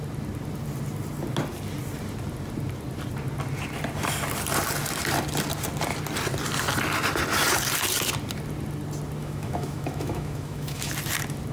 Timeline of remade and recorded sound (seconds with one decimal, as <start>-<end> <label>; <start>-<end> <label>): 0.0-9.2 recorded; 9.2-10.9 remade; 10.9-11.5 recorded